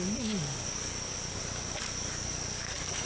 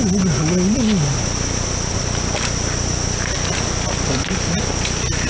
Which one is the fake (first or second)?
first